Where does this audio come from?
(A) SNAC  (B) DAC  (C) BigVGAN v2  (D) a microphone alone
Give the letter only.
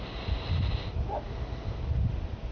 D